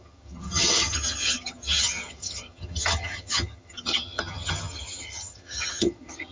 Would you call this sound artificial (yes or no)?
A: yes